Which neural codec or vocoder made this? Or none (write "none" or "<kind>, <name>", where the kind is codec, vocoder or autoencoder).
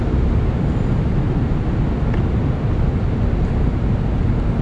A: none